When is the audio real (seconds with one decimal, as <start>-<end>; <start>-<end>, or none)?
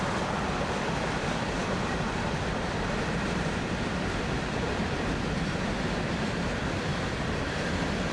none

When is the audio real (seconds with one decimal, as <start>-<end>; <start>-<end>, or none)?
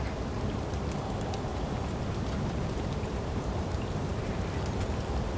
0.0-1.5; 4.7-5.4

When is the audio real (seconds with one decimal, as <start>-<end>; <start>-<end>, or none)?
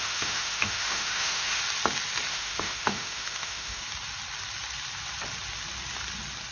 1.6-2.3; 3.8-6.5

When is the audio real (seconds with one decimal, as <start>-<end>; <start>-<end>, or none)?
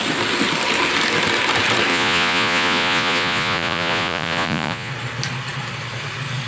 0.0-1.9; 4.9-6.5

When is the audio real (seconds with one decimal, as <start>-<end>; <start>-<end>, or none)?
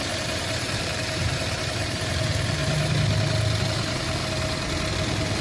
2.6-3.7; 4.2-4.9